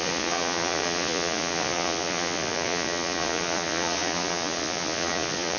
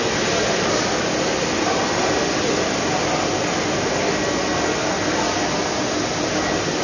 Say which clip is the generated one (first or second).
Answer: first